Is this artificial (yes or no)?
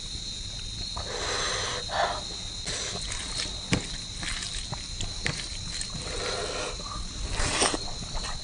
no